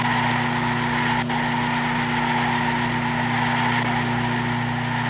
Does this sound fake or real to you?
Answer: real